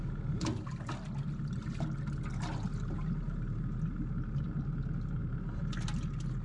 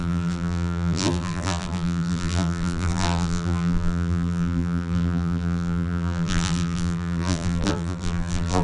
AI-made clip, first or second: second